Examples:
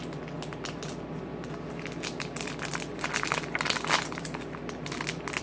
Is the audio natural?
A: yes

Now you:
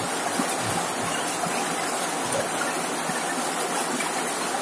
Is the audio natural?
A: yes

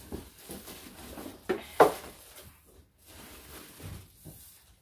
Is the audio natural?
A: yes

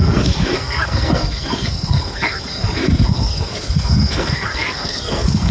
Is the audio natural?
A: no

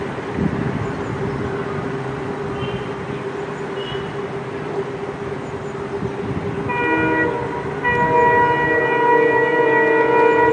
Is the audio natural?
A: yes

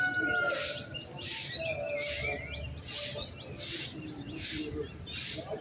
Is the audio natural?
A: yes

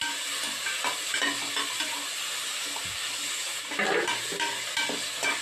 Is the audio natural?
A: yes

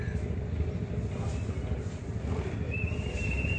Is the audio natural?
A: yes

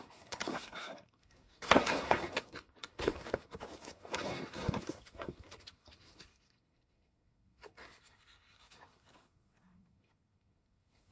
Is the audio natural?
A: no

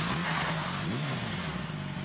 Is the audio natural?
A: yes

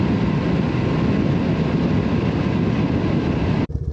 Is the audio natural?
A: yes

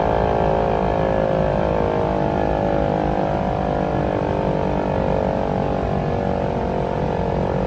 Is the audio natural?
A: yes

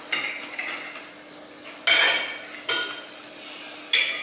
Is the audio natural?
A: yes